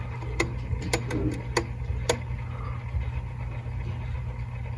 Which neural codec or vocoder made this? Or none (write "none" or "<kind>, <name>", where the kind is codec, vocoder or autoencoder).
none